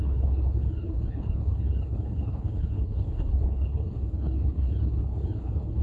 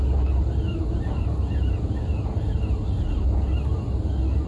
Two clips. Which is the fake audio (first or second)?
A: first